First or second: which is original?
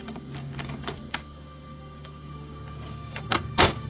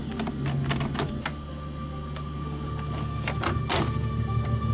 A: second